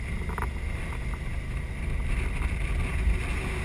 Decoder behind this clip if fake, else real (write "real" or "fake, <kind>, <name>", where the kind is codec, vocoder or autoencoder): real